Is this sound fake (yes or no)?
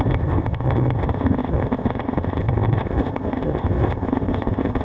yes